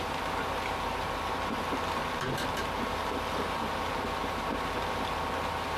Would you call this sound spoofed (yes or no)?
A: yes